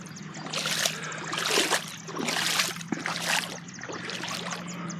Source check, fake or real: real